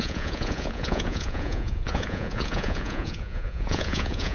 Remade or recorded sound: remade